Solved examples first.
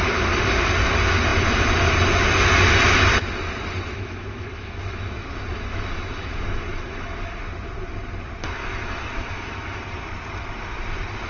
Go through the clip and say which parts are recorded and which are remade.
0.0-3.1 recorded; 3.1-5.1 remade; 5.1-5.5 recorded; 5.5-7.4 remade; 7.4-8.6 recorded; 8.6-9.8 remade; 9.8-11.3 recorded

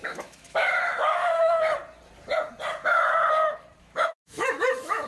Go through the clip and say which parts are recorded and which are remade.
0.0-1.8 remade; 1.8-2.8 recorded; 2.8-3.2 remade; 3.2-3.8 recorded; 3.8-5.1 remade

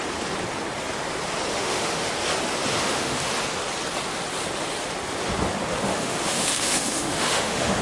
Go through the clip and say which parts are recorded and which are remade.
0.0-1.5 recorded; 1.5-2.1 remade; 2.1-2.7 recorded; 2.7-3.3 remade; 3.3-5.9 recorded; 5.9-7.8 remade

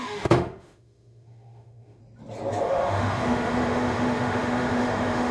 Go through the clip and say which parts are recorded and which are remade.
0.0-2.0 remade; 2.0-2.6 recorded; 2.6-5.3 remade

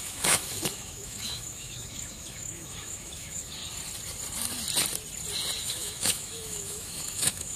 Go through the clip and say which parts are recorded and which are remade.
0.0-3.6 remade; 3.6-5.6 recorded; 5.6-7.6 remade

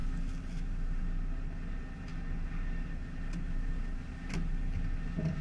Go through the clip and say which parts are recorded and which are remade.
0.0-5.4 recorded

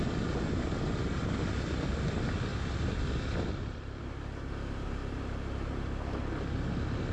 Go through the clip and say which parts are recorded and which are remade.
0.0-7.1 recorded

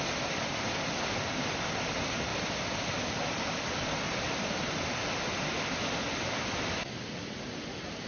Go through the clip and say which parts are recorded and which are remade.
0.0-8.1 recorded